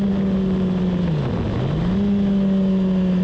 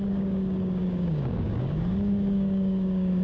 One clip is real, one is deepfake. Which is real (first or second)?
first